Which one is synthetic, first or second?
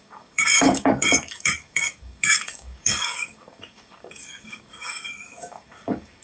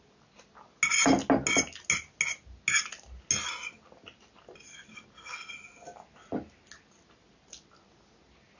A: first